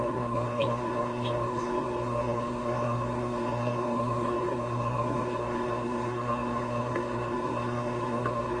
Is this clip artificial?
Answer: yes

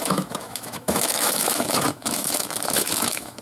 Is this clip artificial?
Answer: yes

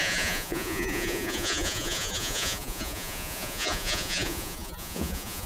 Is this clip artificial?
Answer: yes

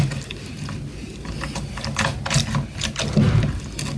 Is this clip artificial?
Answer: no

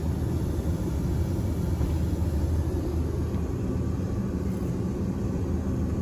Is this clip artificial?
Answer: no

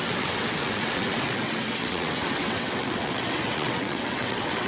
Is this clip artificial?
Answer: yes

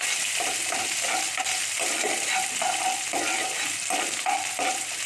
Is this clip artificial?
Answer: no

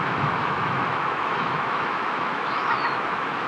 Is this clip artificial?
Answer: yes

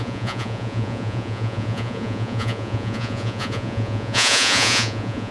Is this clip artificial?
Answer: yes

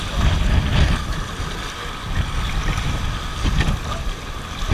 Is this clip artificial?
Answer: no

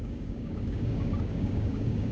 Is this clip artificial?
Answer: yes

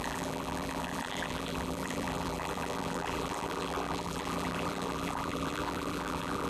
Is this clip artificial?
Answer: yes